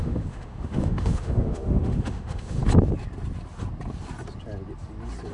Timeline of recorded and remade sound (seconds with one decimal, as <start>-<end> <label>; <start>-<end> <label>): 0.0-2.6 remade; 2.6-5.3 recorded